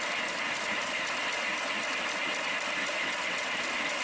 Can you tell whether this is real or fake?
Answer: real